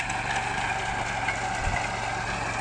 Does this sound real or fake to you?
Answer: real